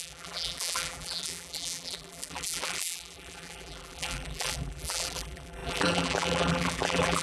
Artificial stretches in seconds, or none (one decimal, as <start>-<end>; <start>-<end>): 0.0-7.2